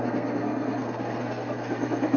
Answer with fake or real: fake